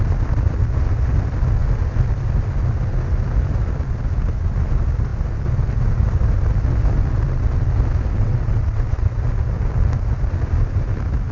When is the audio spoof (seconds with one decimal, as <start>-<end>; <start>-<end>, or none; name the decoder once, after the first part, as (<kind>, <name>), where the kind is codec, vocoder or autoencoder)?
8.2-9.2 (vocoder, WaveNeXt)